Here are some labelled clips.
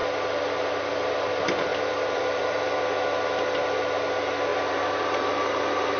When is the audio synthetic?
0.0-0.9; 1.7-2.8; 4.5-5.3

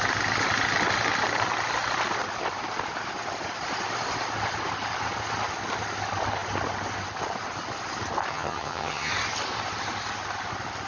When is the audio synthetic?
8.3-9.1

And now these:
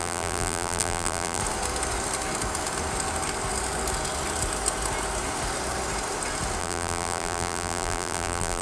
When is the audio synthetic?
0.0-1.4; 6.6-8.6